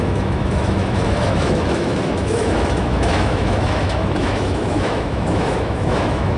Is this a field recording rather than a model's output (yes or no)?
no